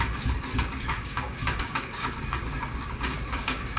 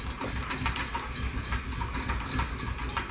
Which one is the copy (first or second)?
first